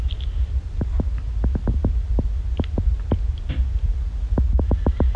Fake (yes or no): no